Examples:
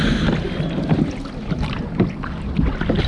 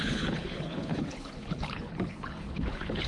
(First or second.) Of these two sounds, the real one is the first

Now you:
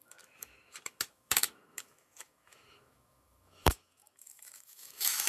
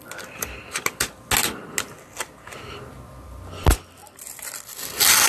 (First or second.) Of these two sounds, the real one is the second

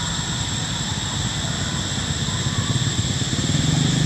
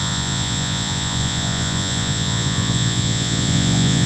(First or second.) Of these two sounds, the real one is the first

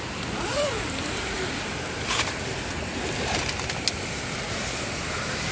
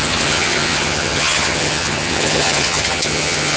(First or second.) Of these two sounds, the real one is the first